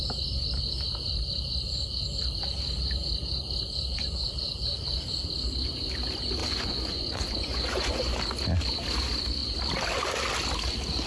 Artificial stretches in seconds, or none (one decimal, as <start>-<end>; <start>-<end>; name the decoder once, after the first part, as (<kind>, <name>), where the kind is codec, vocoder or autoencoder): 6.4-8.2 (vocoder, Vocos)